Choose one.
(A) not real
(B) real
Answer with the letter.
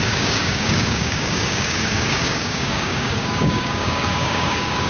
A